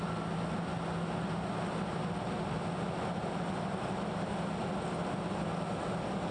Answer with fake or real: real